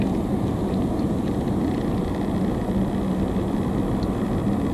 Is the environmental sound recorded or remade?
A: recorded